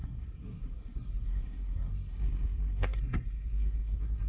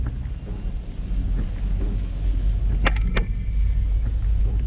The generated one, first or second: first